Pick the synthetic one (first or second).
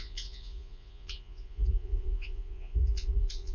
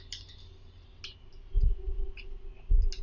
first